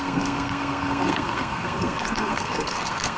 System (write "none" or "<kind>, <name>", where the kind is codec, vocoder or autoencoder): codec, SNAC